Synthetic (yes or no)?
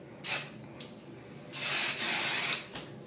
no